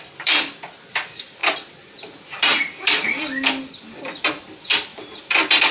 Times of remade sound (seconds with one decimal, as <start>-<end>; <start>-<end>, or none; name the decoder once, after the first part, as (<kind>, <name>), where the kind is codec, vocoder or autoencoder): none